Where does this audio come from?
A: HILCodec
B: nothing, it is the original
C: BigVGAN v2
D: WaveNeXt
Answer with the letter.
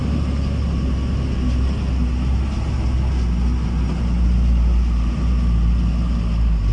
B